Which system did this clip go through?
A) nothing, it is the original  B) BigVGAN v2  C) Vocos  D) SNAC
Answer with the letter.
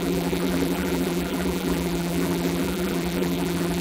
B